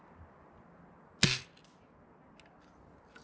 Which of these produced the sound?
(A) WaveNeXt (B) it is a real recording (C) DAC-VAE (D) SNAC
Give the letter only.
B